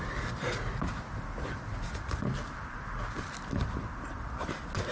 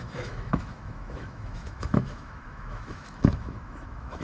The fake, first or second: second